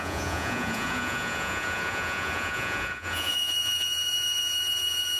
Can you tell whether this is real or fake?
fake